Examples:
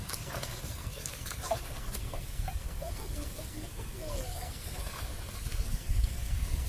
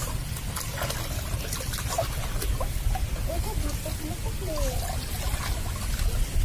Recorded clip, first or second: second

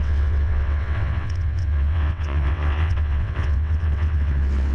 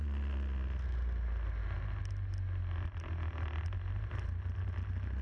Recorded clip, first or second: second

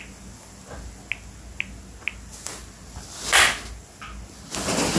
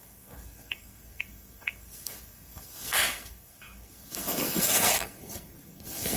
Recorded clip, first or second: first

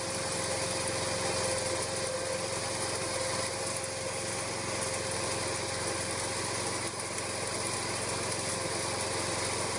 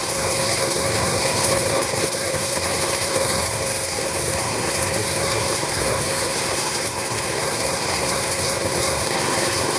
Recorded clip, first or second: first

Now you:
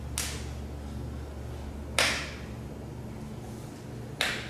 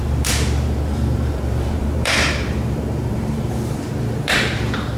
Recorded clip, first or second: first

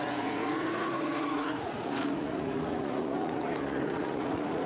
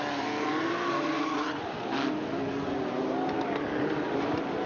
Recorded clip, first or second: second